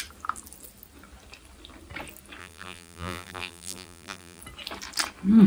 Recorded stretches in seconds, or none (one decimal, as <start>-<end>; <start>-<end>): 0.0-2.4; 4.4-5.5